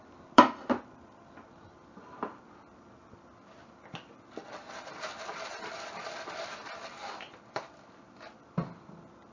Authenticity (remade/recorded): remade